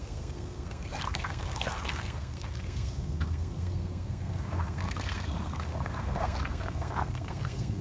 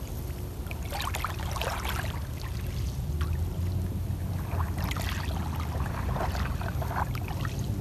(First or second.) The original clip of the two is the second